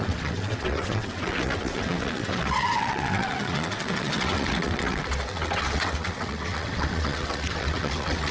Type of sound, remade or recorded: remade